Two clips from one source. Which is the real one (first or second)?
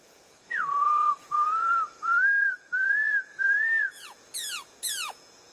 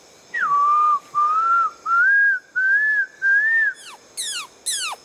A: second